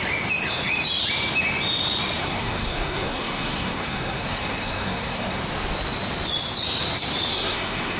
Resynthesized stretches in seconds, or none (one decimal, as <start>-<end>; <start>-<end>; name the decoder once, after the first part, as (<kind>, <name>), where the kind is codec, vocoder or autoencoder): 2.2-5.4 (codec, SNAC); 7.3-8.0